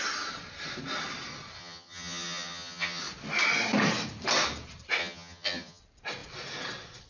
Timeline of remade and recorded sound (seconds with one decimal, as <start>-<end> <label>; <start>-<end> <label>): 0.0-1.6 recorded; 1.6-3.0 remade; 3.0-5.0 recorded; 5.0-5.8 remade; 5.8-7.1 recorded